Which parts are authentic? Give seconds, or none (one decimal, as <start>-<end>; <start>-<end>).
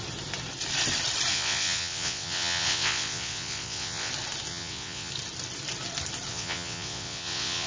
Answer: 0.0-1.3; 4.1-4.5; 5.1-6.3